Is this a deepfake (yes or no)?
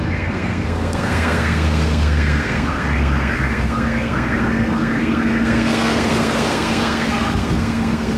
yes